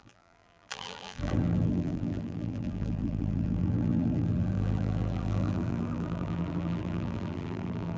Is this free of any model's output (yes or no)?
no